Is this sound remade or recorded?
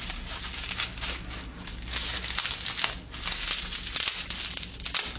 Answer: recorded